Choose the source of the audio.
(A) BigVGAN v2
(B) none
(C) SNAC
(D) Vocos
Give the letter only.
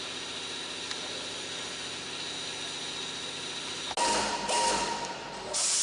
B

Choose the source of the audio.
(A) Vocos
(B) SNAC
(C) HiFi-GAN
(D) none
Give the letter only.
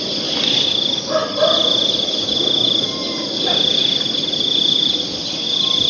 D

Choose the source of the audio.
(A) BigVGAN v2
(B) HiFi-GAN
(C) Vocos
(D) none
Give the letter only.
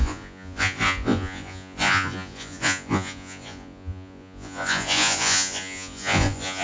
C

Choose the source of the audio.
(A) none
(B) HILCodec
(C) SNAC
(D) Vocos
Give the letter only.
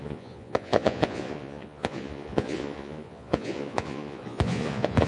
D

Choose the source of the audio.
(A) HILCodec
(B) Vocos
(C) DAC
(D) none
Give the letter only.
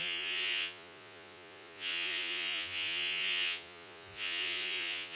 B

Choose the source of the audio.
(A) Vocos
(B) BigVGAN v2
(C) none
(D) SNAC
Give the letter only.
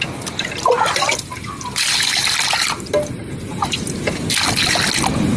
C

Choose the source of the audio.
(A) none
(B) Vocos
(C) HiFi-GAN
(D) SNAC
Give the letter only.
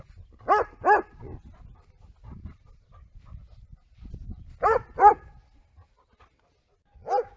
A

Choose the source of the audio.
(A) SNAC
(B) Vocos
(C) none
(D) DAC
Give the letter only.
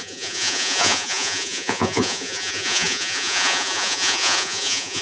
B